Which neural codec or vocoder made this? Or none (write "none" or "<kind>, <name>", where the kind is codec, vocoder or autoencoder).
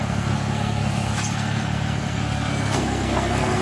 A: codec, SNAC